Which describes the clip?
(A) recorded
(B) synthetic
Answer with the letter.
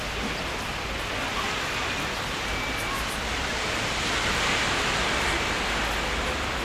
A